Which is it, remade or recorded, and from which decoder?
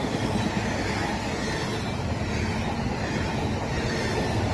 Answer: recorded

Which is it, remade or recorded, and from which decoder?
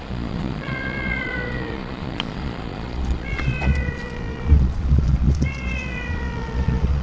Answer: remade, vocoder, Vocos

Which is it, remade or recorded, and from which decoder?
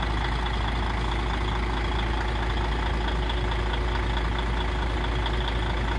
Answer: recorded